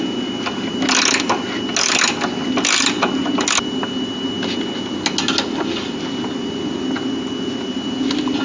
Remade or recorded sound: recorded